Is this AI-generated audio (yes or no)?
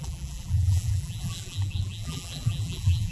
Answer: yes